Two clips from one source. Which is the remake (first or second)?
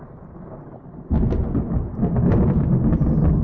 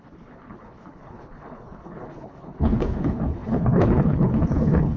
second